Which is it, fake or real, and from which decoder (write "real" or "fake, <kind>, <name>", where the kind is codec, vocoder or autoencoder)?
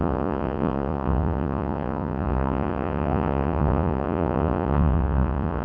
fake, vocoder, Vocos